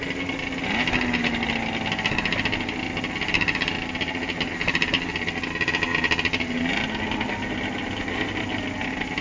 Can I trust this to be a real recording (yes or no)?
yes